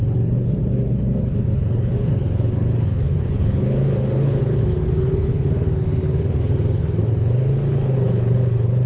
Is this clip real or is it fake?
fake